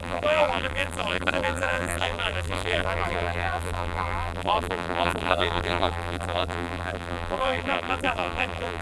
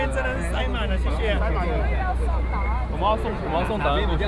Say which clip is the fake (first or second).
first